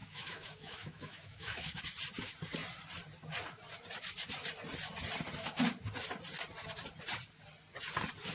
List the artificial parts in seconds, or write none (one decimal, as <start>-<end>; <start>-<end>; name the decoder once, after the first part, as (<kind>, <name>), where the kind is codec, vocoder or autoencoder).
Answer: 0.0-1.8 (autoencoder, DAC-VAE)